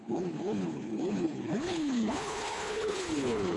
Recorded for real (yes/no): no